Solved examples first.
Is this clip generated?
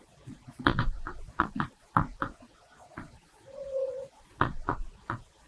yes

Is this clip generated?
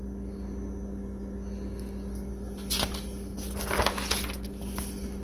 no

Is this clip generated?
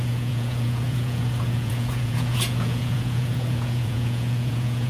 yes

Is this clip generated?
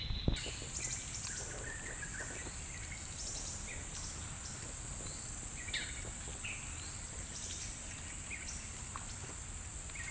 no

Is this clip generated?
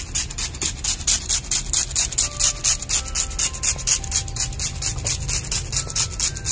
no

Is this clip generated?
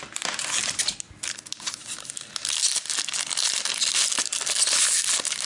no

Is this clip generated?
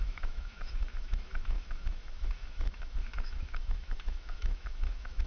yes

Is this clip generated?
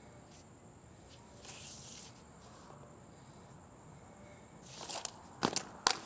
no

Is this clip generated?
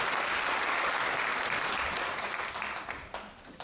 no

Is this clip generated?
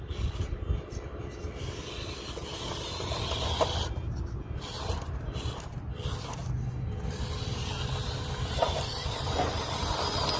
no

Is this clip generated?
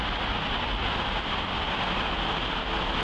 no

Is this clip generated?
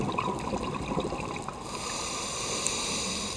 no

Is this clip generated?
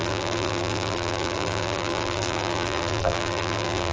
yes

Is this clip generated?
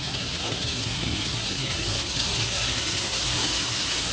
yes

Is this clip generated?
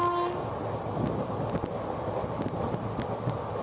no